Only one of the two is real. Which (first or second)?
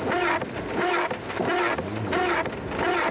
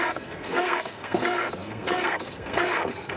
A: first